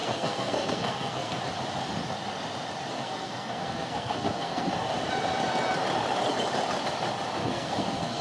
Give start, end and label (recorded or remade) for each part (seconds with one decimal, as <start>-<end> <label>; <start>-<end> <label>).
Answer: 0.0-1.4 remade; 1.4-2.9 recorded; 2.9-4.7 remade; 4.7-7.4 recorded; 7.4-8.2 remade